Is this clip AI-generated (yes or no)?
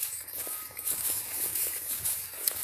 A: yes